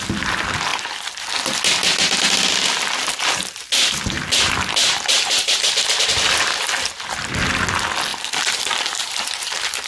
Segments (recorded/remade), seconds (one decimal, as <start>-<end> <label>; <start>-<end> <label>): 0.0-4.8 recorded; 4.8-6.6 remade; 6.6-8.1 recorded; 8.1-9.9 remade